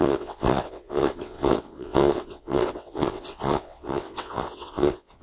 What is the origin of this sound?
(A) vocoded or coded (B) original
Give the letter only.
A